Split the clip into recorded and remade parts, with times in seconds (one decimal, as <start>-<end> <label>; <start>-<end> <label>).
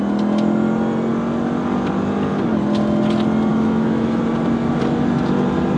0.0-3.5 recorded; 3.5-4.2 remade; 4.2-5.8 recorded